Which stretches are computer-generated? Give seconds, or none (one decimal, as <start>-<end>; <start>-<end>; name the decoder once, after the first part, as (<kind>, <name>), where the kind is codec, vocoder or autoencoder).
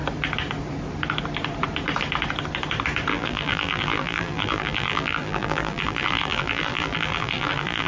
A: 3.1-7.9 (vocoder, BigVGAN v2)